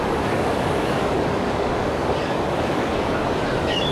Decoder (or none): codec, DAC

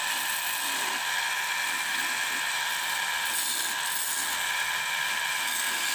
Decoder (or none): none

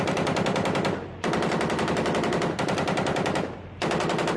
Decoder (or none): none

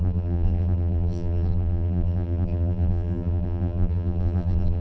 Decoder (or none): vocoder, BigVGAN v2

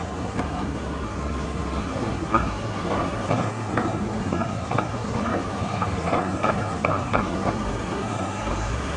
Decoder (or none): codec, SNAC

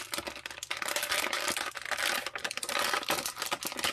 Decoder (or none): none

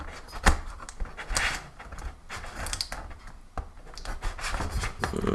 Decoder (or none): none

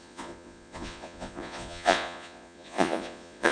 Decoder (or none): vocoder, Vocos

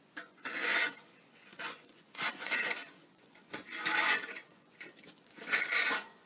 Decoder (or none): vocoder, Vocos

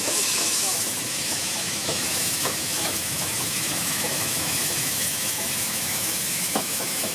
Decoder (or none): autoencoder, DAC-VAE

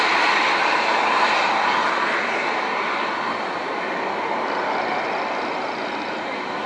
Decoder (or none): none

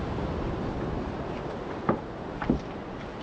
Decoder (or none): none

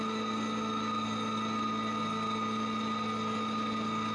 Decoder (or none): none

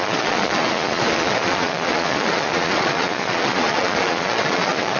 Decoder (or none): vocoder, Vocos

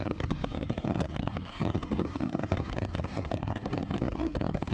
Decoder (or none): codec, SNAC